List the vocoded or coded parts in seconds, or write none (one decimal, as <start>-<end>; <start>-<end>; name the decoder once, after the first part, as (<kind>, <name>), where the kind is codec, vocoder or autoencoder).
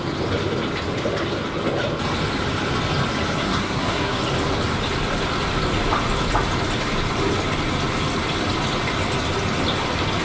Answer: 3.4-4.2 (codec, SNAC)